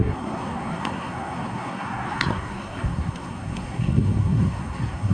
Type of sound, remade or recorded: remade